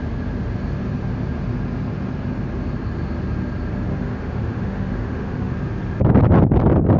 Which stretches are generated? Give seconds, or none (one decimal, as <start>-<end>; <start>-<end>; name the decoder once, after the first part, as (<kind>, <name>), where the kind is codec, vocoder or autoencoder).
3.9-5.5 (autoencoder, DAC-VAE)